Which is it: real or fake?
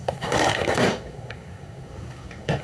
fake